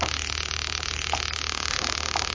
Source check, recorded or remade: recorded